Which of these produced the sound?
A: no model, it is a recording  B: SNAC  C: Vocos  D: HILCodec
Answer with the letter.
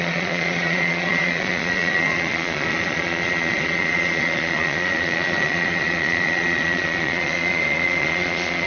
C